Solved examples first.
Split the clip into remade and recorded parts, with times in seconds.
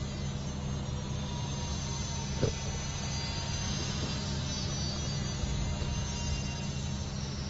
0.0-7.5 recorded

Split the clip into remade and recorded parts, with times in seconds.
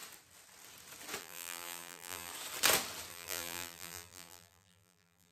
0.0-1.2 recorded; 1.2-2.3 remade; 2.3-3.1 recorded; 3.1-5.3 remade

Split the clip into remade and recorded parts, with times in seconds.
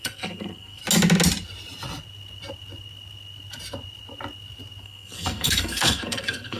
0.0-0.8 remade; 0.8-4.8 recorded; 4.8-6.6 remade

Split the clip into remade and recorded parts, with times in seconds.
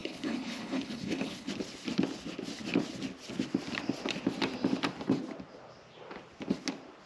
0.0-1.5 remade; 1.5-7.1 recorded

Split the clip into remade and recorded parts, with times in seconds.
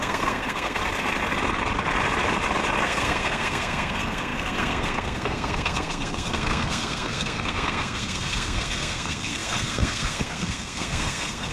0.0-0.8 remade; 0.8-2.8 recorded; 2.8-11.5 remade